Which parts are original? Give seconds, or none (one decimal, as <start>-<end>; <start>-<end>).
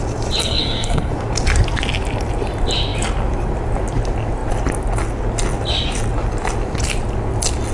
0.0-0.4; 1.1-7.7